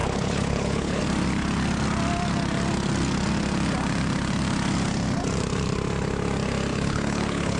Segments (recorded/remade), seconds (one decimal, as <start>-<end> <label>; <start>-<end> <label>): 0.0-1.0 remade; 1.0-6.7 recorded; 6.7-7.6 remade

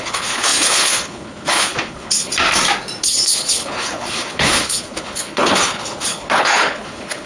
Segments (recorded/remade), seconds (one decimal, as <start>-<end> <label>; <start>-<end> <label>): 0.0-2.3 remade; 2.3-3.0 recorded; 3.0-7.3 remade

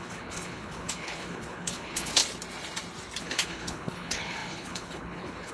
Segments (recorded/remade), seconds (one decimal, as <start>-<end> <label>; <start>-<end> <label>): 0.0-2.2 remade; 2.2-3.2 recorded; 3.2-5.5 remade

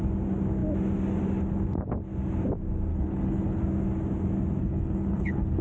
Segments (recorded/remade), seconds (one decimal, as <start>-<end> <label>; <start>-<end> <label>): 0.0-2.9 recorded; 2.9-3.6 remade; 3.6-4.6 recorded; 4.6-5.6 remade

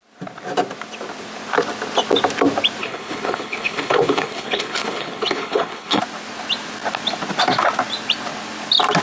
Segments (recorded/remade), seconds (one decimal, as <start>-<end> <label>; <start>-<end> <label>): 0.0-2.8 recorded; 2.8-6.0 remade; 6.0-9.0 recorded

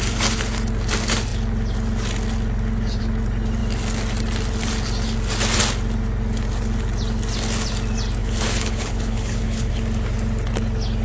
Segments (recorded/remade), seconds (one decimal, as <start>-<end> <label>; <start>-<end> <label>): 0.0-8.2 recorded; 8.2-9.7 remade; 9.7-11.0 recorded

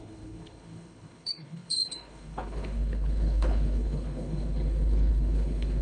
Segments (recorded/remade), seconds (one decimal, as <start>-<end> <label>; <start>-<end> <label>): 0.0-5.8 remade

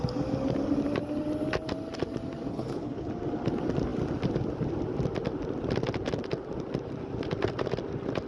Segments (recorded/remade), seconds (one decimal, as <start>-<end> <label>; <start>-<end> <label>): 0.0-2.5 recorded; 2.5-3.1 remade; 3.1-8.3 recorded